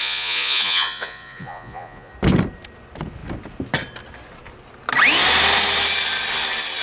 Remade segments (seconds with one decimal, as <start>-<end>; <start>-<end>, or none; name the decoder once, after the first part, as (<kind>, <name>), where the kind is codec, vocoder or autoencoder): 0.0-2.1 (vocoder, Vocos)